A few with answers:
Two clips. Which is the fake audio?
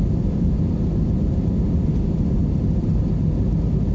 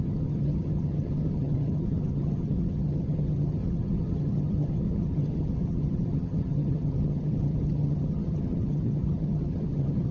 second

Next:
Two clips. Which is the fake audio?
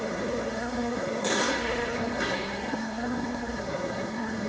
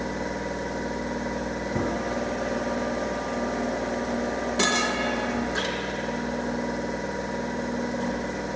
first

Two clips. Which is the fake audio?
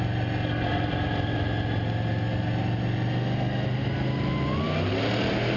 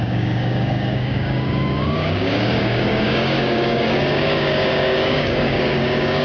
second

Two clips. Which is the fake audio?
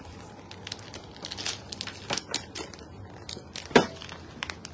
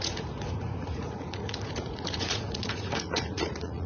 second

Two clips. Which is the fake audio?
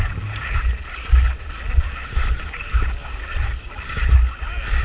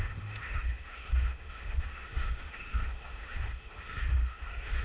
second